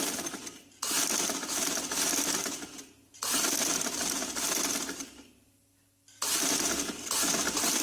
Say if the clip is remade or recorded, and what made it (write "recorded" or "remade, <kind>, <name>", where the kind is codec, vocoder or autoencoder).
remade, vocoder, BigVGAN v2